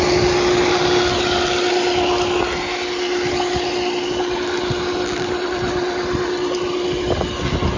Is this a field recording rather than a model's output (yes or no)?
yes